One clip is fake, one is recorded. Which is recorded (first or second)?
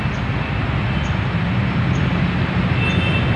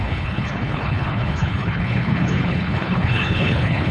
first